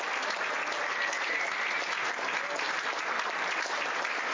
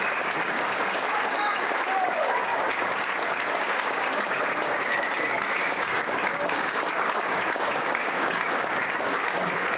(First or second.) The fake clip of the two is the second